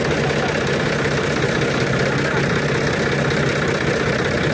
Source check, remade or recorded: recorded